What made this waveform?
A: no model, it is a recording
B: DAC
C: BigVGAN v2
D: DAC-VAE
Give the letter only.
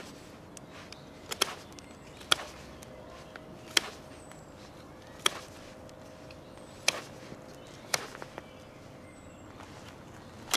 A